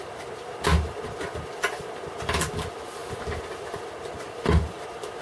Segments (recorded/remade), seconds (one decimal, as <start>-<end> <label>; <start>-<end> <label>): 0.0-5.2 recorded